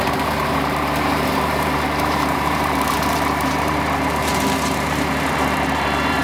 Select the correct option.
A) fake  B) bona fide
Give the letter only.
A